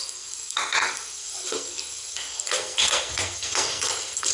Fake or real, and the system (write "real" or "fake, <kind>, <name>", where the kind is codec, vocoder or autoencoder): fake, codec, SNAC